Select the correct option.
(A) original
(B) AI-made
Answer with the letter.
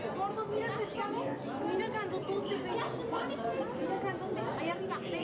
A